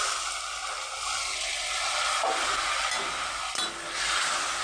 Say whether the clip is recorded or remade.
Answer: recorded